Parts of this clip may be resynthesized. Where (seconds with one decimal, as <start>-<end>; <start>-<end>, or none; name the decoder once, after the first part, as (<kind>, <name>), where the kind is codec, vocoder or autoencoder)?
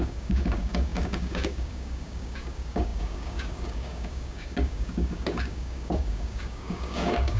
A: 0.0-7.4 (codec, DAC)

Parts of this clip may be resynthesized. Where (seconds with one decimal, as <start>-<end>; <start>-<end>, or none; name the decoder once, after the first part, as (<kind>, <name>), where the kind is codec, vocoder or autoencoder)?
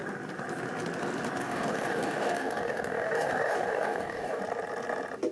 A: 1.4-4.4 (codec, DAC)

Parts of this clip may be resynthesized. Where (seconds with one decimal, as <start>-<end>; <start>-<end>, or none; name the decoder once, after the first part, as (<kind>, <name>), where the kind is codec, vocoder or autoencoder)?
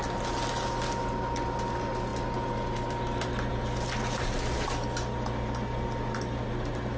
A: none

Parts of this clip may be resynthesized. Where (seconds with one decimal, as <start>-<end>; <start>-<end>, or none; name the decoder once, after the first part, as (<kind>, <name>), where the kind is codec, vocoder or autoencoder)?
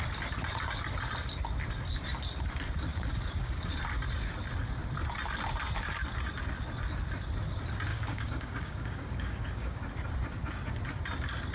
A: 2.9-3.7 (codec, DAC); 7.9-9.8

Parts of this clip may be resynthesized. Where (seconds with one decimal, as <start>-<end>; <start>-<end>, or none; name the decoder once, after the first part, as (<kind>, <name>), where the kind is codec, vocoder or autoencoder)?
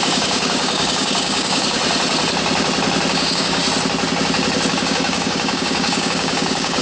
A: 0.0-1.8 (codec, DAC); 3.1-3.6; 4.7-6.8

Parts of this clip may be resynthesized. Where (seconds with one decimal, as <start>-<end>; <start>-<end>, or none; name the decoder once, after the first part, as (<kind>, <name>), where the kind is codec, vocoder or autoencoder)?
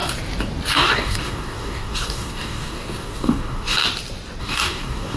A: 0.7-3.8 (codec, DAC); 4.4-5.2